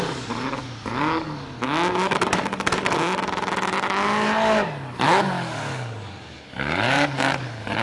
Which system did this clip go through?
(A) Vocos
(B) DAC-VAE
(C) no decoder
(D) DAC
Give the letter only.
D